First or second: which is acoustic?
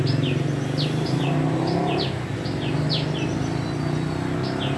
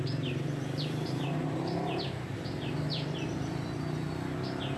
first